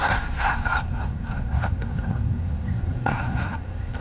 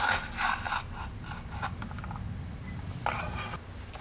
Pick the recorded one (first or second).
second